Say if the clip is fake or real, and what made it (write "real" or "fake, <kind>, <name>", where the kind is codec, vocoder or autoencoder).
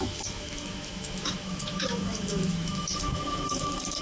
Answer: fake, autoencoder, DAC-VAE